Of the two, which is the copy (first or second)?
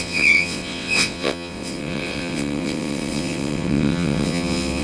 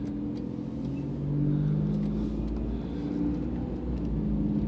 first